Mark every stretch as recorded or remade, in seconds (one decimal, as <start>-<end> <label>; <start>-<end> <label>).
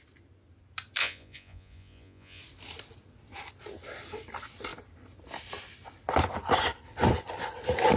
0.0-1.0 recorded; 1.0-2.4 remade; 2.4-8.0 recorded